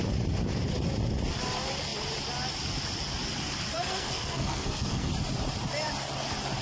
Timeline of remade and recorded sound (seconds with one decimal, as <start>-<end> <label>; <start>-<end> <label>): 0.0-3.7 recorded; 3.7-5.1 remade; 5.1-6.6 recorded